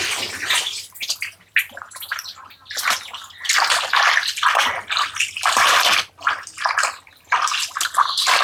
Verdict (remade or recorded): recorded